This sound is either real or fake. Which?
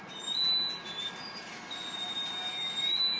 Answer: real